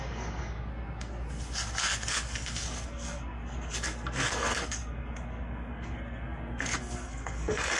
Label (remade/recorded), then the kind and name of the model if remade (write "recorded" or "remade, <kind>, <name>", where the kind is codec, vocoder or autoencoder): remade, codec, SNAC